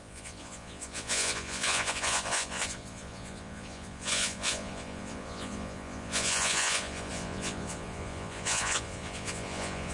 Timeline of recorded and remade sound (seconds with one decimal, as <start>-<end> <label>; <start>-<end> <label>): 0.0-9.9 remade